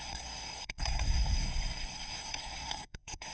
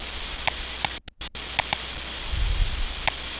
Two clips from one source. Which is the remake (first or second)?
first